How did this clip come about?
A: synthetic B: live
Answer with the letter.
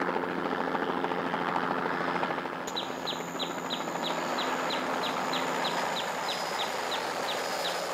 B